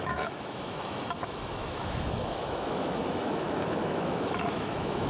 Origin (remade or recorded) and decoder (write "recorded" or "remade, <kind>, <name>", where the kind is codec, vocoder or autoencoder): remade, autoencoder, DAC-VAE